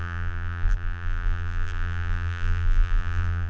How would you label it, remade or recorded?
remade